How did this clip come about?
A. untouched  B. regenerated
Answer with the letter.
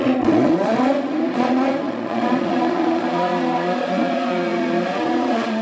B